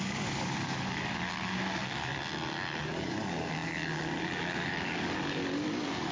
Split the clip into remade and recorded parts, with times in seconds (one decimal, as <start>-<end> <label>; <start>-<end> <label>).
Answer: 0.0-2.1 remade; 2.1-2.8 recorded; 2.8-6.1 remade